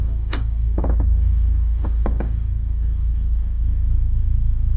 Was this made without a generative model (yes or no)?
no